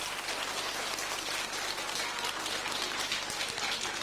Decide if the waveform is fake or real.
real